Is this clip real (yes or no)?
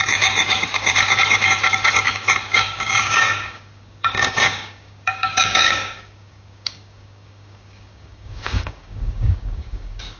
no